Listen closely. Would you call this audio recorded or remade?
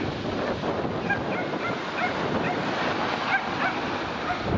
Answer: recorded